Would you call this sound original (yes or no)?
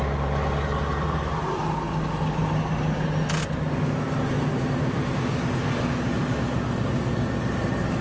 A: yes